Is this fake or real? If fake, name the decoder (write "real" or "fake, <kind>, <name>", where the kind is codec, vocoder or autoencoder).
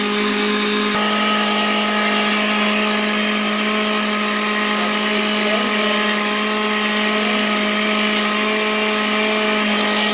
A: real